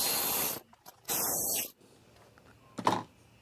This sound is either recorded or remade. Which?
recorded